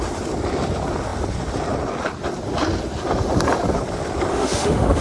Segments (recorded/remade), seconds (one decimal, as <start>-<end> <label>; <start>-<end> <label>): 0.0-4.3 recorded; 4.3-5.0 remade